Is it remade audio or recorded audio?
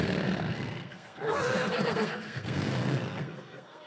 remade